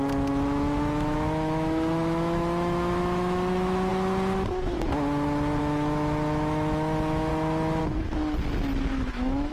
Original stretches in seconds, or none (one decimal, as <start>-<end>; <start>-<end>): 3.9-5.6; 7.3-7.8; 8.2-8.9